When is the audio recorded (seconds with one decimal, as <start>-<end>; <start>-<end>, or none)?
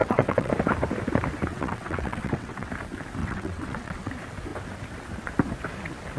0.5-1.5; 2.7-3.2; 4.1-6.2